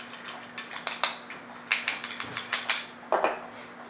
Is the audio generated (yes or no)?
no